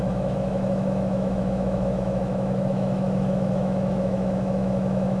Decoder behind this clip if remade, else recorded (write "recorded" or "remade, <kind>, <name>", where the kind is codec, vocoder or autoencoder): remade, autoencoder, DAC-VAE